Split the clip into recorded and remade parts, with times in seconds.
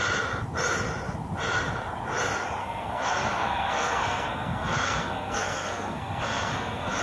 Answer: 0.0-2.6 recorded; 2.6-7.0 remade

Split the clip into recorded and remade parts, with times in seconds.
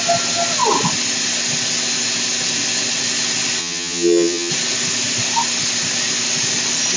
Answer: 0.0-3.6 recorded; 3.6-4.5 remade; 4.5-7.0 recorded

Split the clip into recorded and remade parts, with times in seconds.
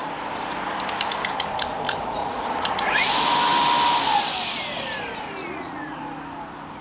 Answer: 0.0-2.2 recorded; 2.2-2.9 remade; 2.9-5.4 recorded; 5.4-6.0 remade; 6.0-6.8 recorded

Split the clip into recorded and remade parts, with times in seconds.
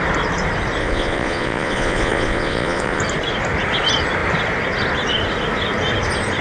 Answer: 0.0-0.8 recorded; 0.8-3.0 remade; 3.0-6.4 recorded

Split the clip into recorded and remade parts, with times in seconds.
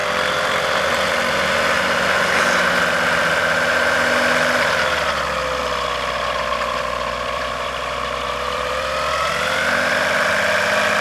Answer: 0.0-0.9 remade; 0.9-5.6 recorded; 5.6-9.9 remade; 9.9-11.0 recorded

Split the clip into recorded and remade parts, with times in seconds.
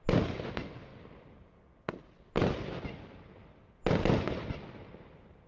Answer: 0.0-5.5 recorded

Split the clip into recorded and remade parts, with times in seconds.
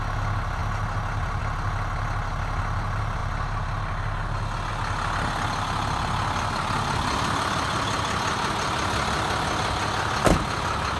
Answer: 0.0-11.0 recorded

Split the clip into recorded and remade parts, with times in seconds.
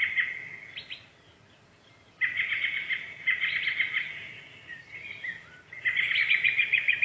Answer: 0.0-7.0 recorded